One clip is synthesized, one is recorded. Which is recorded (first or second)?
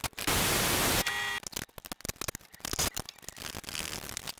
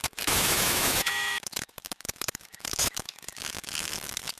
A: first